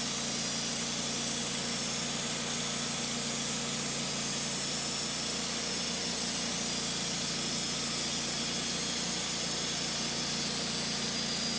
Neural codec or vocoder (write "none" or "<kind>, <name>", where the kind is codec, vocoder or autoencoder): none